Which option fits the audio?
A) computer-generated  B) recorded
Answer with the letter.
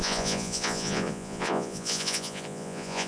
A